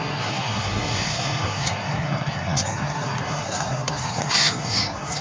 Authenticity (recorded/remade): remade